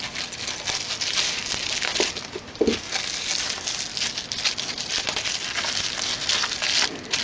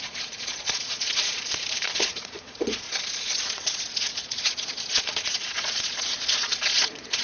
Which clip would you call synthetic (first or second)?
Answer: second